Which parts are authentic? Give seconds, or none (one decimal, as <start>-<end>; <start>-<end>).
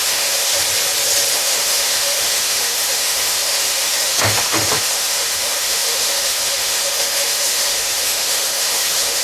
0.5-1.3